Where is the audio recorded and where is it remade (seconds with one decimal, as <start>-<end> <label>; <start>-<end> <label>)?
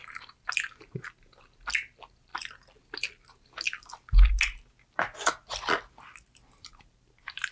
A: 0.0-7.5 recorded